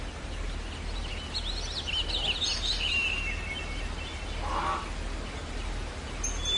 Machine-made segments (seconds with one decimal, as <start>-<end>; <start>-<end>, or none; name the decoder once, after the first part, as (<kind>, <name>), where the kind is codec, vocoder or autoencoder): none